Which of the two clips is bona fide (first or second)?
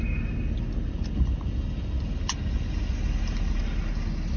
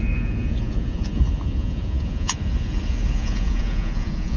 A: first